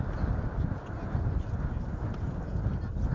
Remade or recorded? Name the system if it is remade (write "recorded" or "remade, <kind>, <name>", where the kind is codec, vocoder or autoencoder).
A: recorded